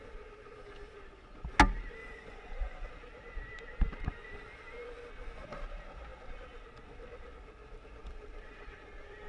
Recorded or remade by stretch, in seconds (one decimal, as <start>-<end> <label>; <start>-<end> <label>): 0.0-2.0 recorded; 2.0-2.9 remade; 2.9-9.3 recorded